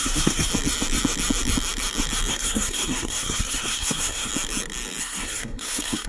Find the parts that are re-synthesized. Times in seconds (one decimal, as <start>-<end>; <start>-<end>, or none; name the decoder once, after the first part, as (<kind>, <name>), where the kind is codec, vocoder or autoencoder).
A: 0.0-0.5 (codec, SNAC); 2.3-4.3; 5.0-6.1